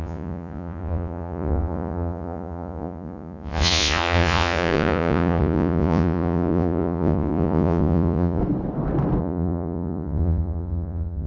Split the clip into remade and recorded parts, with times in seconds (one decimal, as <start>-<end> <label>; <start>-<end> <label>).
0.0-8.4 remade; 8.4-9.2 recorded; 9.2-11.3 remade

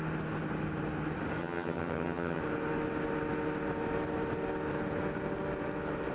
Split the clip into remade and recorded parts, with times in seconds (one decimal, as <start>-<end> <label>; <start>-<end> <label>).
0.0-1.4 recorded; 1.4-2.4 remade; 2.4-6.1 recorded

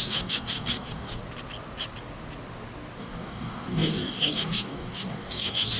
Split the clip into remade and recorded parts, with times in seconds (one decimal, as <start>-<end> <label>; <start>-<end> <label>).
0.0-1.2 remade; 1.2-3.0 recorded; 3.0-5.8 remade

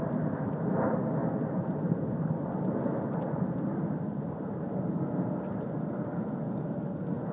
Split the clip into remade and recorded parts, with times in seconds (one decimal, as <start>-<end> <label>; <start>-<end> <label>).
0.0-1.2 recorded; 1.2-5.0 remade; 5.0-7.3 recorded

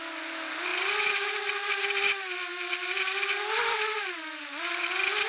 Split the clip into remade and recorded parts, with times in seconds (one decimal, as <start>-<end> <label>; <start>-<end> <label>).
0.0-5.3 recorded

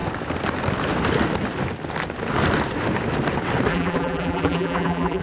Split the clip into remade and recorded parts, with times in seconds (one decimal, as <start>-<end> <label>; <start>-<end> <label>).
0.0-3.7 recorded; 3.7-5.2 remade